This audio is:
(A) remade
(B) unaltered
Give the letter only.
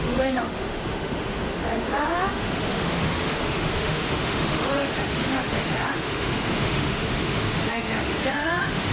A